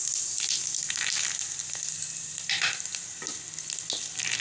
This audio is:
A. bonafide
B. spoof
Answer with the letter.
A